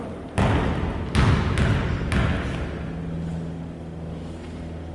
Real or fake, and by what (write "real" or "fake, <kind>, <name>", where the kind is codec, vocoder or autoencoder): real